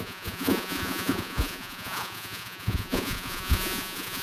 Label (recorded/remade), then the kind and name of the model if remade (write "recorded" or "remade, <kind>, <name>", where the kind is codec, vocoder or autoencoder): remade, vocoder, Vocos